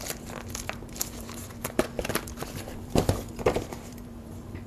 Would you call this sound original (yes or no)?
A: no